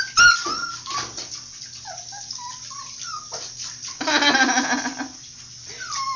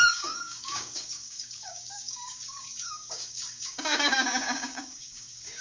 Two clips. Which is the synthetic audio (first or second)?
second